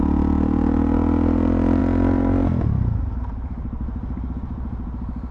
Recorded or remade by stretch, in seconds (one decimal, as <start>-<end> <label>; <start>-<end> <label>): 0.0-5.3 recorded